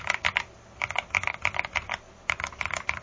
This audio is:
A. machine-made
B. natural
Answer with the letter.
A